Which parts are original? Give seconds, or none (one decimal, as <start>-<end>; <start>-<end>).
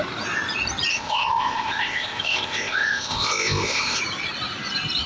0.0-0.9; 4.0-5.1